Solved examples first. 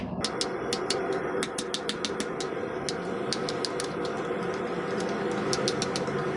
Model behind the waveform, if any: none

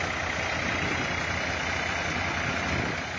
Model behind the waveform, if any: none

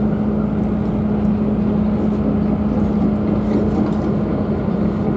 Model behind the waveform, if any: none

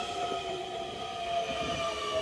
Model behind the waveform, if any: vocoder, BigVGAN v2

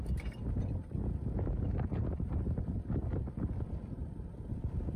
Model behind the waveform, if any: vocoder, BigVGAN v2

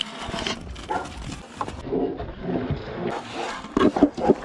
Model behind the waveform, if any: none